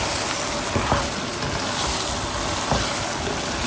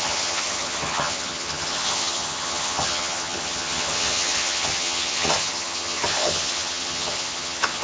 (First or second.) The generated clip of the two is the second